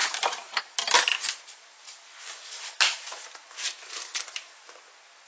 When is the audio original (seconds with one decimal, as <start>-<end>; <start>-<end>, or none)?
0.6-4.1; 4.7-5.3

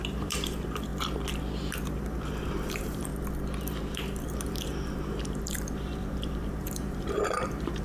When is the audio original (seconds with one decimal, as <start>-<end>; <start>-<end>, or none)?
0.9-1.8; 3.1-3.8

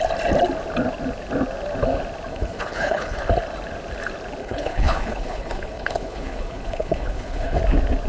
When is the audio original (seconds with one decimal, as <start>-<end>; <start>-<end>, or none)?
0.0-2.3; 3.2-4.4; 7.6-8.1

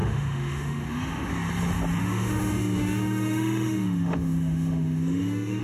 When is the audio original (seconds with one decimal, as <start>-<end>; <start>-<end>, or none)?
1.3-2.0

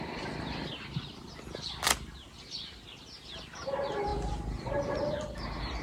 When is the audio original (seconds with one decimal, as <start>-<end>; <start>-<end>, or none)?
0.0-5.8

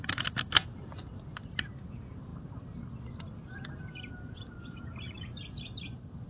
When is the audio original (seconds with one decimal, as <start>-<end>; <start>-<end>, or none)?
0.0-6.3